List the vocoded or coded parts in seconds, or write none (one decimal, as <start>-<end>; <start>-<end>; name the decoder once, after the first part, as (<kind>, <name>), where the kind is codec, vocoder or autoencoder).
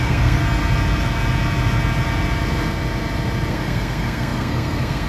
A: 0.0-0.4 (codec, SNAC); 3.5-5.1